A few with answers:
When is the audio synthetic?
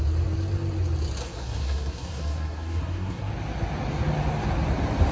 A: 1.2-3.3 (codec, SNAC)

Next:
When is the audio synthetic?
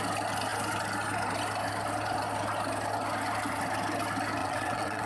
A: 4.4-5.1 (vocoder, WaveNeXt)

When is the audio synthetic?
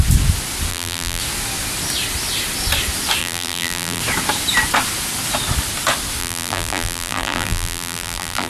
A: 0.7-1.2 (vocoder, BigVGAN v2); 3.2-4.0; 6.2-8.5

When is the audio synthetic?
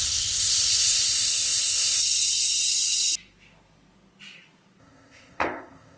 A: 0.0-2.0 (codec, ZipCodec); 4.8-6.0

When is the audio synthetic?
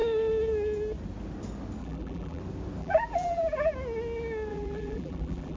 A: 1.8-2.4 (vocoder, BigVGAN v2); 2.8-3.7; 4.5-5.6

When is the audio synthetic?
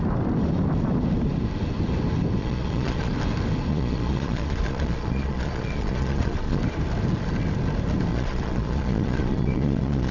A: 2.4-3.1 (vocoder, Vocos); 3.7-6.6; 8.1-10.1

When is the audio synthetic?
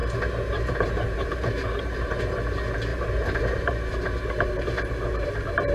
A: 0.0-2.2 (vocoder, BigVGAN v2); 2.9-5.3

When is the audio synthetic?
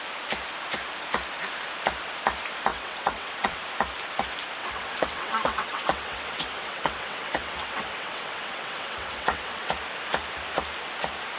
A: 2.7-3.6 (vocoder, WaveNeXt); 4.6-9.7